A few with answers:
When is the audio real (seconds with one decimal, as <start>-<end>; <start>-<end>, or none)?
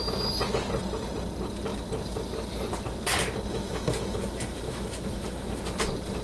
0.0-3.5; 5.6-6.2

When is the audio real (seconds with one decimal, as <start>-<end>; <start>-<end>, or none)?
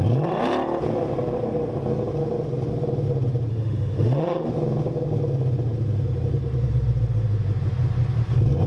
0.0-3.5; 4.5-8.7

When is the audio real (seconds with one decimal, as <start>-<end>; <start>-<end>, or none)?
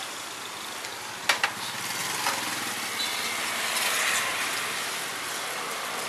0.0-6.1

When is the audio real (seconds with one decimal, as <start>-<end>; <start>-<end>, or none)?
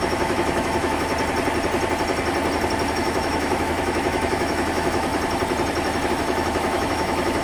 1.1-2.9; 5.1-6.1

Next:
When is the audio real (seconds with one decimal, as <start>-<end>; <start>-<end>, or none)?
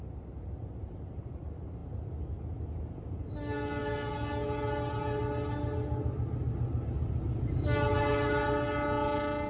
0.0-9.5